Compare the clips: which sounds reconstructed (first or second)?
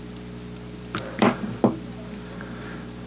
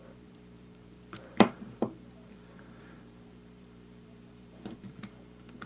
second